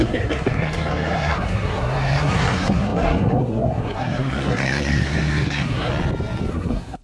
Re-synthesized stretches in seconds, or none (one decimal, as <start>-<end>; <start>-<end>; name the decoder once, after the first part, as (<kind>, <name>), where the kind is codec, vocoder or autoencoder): 0.0-5.9 (codec, SNAC); 6.5-7.0

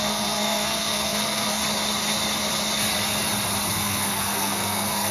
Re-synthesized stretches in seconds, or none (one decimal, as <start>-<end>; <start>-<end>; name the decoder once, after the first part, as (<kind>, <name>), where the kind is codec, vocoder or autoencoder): 0.0-1.6 (codec, SNAC); 3.7-5.1

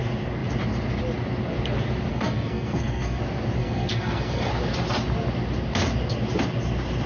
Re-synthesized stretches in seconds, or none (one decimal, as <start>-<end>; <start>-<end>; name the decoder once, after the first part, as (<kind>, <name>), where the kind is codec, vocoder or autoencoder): 2.1-3.2 (codec, SNAC); 3.6-4.5

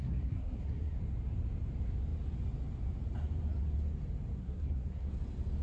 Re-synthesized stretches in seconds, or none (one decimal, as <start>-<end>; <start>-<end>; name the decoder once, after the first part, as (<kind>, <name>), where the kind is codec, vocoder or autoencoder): 0.0-1.0 (codec, SNAC); 4.4-5.1

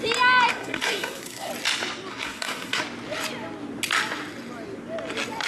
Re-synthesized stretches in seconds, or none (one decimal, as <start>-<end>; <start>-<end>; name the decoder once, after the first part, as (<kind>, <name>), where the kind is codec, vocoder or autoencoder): 0.5-1.5 (codec, SNAC); 2.1-2.8

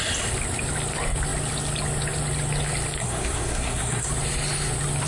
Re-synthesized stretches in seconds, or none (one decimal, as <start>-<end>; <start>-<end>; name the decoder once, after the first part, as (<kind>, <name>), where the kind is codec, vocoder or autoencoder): 3.0-4.1 (codec, SNAC)